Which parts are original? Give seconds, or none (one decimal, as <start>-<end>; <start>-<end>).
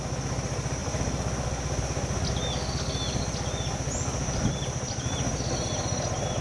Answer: 0.0-6.4